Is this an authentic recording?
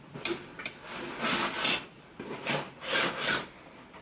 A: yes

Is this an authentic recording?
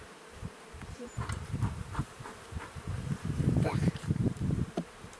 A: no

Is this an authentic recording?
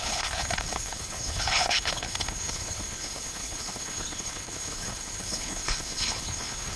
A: no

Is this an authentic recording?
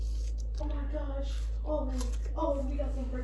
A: yes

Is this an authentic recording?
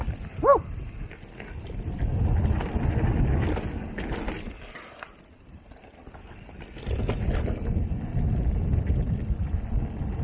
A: yes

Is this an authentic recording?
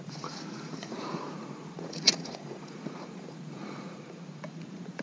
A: no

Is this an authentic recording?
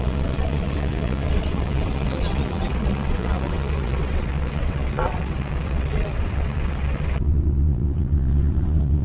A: no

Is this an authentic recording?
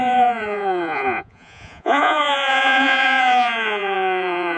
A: no